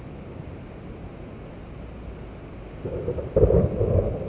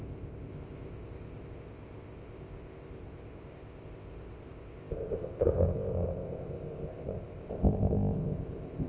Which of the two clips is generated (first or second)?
second